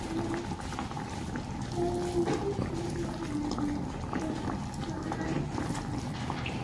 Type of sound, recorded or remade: recorded